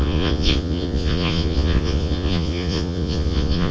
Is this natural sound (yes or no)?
no